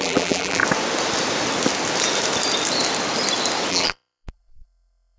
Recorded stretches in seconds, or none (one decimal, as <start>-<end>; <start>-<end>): 0.6-3.7